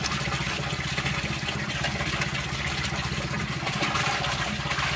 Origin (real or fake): real